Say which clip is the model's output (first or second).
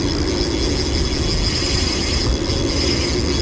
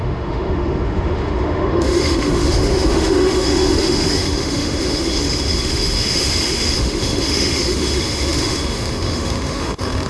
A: second